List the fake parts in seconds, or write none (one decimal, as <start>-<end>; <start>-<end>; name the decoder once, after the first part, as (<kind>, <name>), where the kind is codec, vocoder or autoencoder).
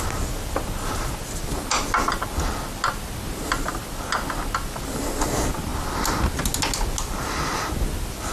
none